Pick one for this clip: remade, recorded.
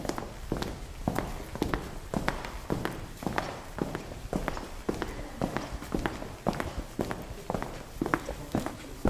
recorded